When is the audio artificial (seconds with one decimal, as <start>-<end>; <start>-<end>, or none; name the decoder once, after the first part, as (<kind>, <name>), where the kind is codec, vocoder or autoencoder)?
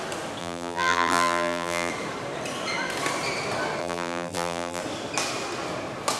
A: 0.4-1.9 (vocoder, BigVGAN v2); 3.8-4.8